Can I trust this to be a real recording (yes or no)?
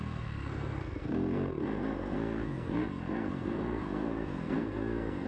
no